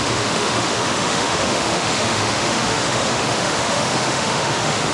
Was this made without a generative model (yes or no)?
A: no